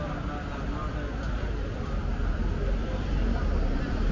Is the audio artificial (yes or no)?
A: no